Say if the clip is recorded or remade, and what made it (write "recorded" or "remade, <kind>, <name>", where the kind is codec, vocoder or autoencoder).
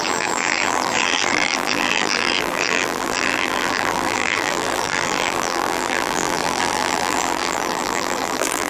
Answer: remade, vocoder, BigVGAN v2